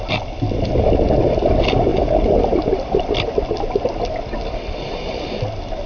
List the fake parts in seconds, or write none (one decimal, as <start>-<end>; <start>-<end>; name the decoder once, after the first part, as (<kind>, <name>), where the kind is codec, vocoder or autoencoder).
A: none